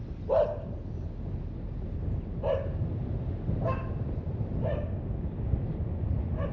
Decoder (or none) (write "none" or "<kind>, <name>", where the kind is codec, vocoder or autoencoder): none